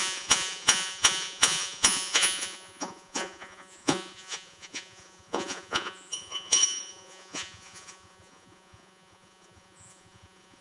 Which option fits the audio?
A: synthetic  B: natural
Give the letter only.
A